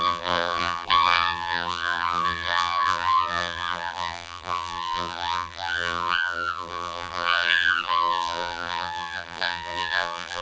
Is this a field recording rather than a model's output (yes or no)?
no